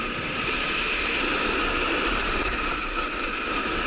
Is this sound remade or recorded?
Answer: remade